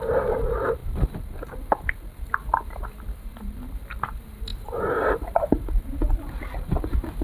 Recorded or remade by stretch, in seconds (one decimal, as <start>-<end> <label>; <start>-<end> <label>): 0.0-0.8 recorded; 0.8-2.6 remade; 2.6-7.2 recorded